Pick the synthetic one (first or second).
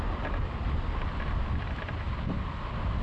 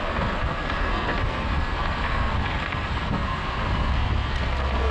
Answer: second